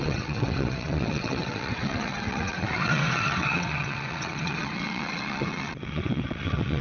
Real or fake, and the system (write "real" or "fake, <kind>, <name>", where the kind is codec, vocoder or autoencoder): fake, vocoder, WaveNeXt